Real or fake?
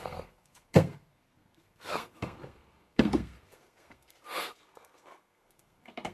fake